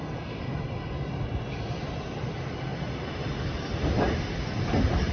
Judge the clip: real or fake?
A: real